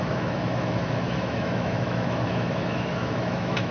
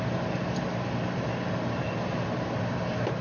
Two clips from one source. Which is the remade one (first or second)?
first